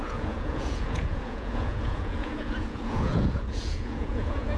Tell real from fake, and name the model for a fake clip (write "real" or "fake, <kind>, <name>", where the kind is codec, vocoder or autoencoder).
fake, vocoder, Vocos